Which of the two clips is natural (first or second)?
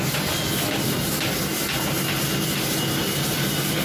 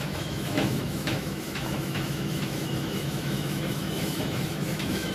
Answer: first